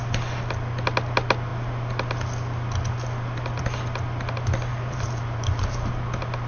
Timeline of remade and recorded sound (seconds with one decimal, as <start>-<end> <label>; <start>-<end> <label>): 0.0-4.7 recorded; 4.7-5.9 remade; 5.9-6.5 recorded